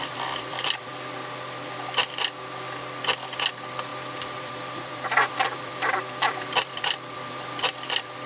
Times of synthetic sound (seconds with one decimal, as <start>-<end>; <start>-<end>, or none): 0.0-0.9; 3.5-8.3